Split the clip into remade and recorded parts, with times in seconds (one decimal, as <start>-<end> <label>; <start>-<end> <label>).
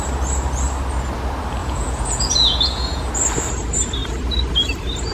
0.0-1.6 recorded; 1.6-3.1 remade; 3.1-5.1 recorded